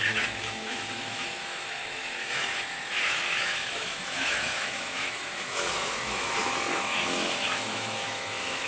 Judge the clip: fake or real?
fake